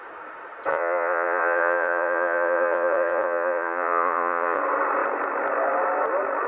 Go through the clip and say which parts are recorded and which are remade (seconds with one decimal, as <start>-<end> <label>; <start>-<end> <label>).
0.0-0.7 recorded; 0.7-4.6 remade; 4.6-6.5 recorded

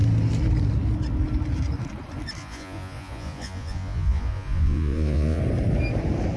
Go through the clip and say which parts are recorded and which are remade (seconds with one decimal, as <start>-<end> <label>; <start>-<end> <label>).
0.0-2.4 recorded; 2.4-5.4 remade; 5.4-6.4 recorded

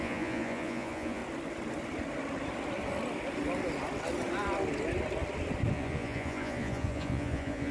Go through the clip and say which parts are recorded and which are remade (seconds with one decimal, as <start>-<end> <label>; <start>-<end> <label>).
0.0-1.2 remade; 1.2-5.7 recorded; 5.7-7.7 remade

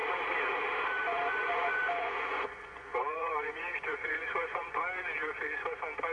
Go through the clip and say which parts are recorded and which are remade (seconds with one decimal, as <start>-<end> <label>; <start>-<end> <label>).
0.0-1.1 recorded; 1.1-4.8 remade; 4.8-6.1 recorded